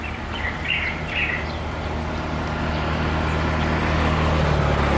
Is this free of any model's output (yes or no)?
yes